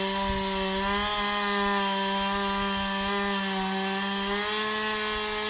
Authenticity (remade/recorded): recorded